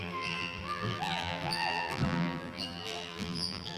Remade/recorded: remade